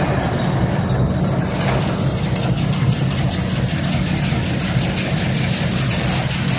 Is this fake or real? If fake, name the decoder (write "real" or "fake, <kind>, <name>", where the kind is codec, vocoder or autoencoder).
real